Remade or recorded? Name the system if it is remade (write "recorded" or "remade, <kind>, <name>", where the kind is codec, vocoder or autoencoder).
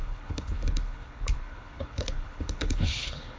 remade, codec, HILCodec